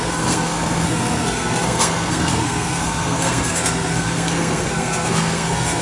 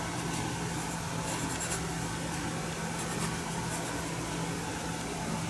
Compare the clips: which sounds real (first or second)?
second